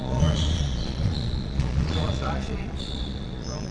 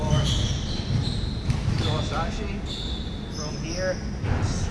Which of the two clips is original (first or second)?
second